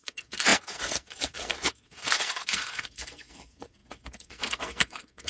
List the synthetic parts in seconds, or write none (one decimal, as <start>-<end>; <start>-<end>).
0.0-5.3